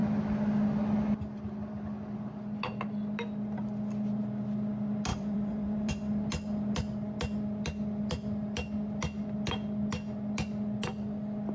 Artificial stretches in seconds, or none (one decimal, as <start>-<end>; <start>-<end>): 5.1-5.9